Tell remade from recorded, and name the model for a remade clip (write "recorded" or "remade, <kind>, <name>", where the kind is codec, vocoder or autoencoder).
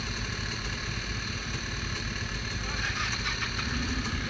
recorded